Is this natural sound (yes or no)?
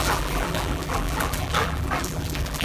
no